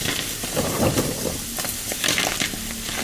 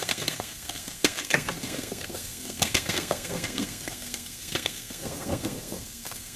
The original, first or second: first